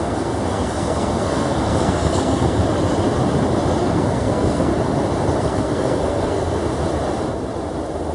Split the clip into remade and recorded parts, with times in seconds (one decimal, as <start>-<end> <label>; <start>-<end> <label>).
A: 0.0-2.6 remade; 2.6-3.8 recorded; 3.8-4.7 remade; 4.7-5.4 recorded; 5.4-6.6 remade; 6.6-8.1 recorded